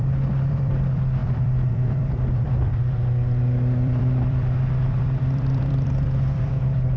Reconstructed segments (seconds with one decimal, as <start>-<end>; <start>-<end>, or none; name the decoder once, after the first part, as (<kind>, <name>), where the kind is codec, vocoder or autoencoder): 0.0-7.0 (vocoder, BigVGAN v2)